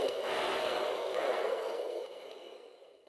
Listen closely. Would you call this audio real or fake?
fake